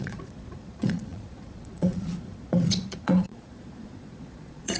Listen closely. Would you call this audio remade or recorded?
remade